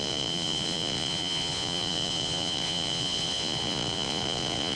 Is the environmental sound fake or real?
fake